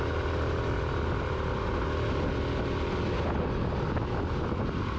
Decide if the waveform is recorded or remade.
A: recorded